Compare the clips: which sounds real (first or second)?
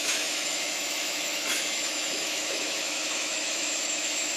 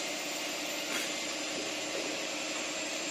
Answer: second